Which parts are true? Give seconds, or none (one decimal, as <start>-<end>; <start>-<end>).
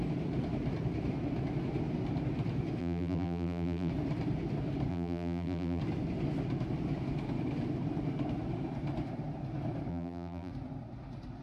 0.0-2.8; 3.9-4.9; 5.8-9.9; 10.5-11.4